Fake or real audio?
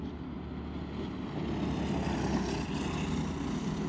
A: real